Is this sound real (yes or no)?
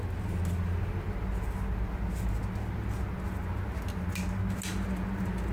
yes